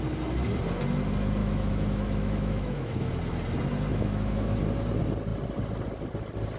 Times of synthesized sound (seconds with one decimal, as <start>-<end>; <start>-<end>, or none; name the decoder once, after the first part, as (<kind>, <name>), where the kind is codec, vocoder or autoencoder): 1.4-3.1 (autoencoder, DAC-VAE); 3.9-4.6

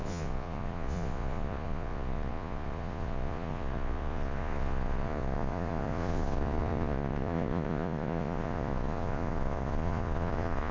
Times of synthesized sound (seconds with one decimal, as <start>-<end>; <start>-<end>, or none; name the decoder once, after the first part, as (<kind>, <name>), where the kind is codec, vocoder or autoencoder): 0.0-10.7 (vocoder, Vocos)

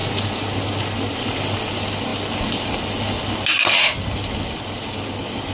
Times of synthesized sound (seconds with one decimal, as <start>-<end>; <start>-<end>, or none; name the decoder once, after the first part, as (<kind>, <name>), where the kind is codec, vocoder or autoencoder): none

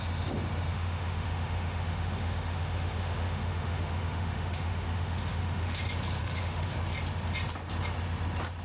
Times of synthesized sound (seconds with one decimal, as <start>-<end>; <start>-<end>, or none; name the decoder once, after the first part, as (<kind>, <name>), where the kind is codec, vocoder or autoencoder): 0.7-5.8 (autoencoder, DAC-VAE); 6.2-6.7

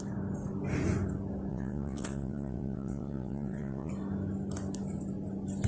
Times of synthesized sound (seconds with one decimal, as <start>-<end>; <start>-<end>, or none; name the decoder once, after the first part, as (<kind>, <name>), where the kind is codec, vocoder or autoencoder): 1.5-3.9 (vocoder, WaveNeXt)